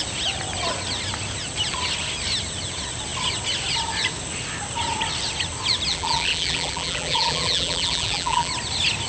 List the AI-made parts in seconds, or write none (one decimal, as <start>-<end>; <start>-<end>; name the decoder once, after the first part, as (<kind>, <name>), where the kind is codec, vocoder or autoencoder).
5.9-8.5 (vocoder, BigVGAN v2)